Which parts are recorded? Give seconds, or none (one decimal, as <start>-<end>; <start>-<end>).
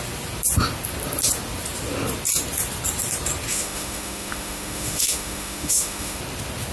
0.0-3.5; 6.2-6.7